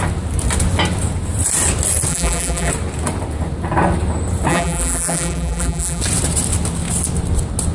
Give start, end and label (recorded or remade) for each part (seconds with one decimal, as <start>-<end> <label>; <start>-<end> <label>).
0.0-2.1 recorded; 2.1-2.7 remade; 2.7-4.5 recorded; 4.5-6.0 remade; 6.0-7.7 recorded